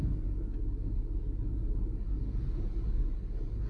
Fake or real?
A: real